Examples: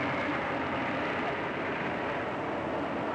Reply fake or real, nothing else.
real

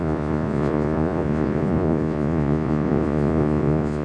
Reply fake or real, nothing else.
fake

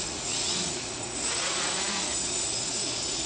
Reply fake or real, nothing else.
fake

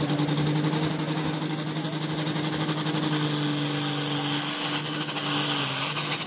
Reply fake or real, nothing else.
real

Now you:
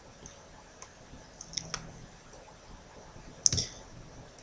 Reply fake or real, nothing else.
real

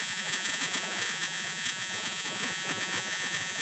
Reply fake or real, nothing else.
fake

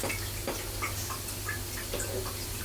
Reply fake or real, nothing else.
real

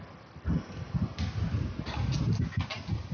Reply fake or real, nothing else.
real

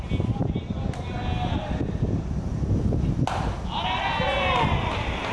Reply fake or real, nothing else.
real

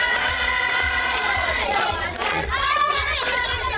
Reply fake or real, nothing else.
fake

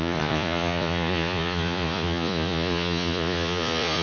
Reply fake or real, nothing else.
fake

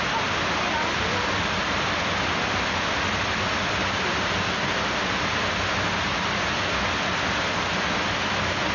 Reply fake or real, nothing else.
real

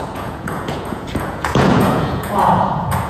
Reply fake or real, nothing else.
fake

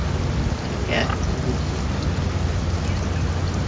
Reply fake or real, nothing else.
real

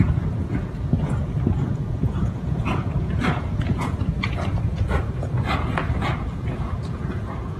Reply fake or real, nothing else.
fake